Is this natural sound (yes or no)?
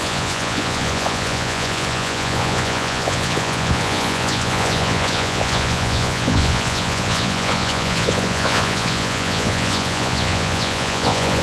no